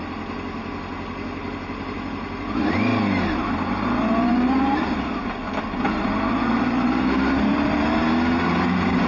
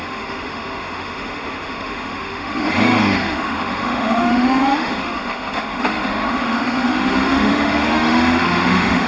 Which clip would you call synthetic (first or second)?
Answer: second